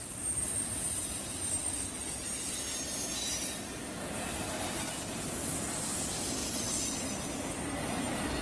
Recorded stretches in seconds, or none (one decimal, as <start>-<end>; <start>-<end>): 0.0-8.4